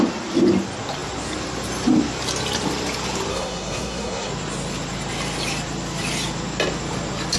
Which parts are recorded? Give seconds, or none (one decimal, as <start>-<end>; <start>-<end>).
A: 0.0-3.3; 4.3-7.4